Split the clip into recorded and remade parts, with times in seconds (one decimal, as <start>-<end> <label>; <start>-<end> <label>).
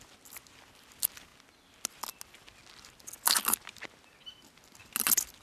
0.0-5.4 recorded